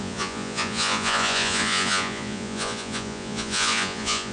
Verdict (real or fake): fake